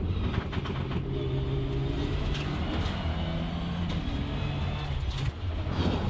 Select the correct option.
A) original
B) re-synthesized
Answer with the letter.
A